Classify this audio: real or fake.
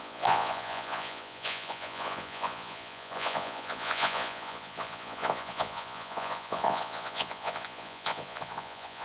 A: fake